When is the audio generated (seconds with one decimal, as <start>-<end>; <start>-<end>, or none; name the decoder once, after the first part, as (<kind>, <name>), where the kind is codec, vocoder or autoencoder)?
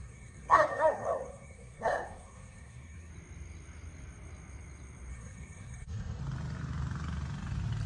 0.0-3.1 (codec, SNAC); 5.1-6.2